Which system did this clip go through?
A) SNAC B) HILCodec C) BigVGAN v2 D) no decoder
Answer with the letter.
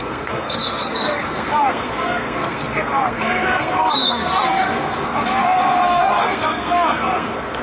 A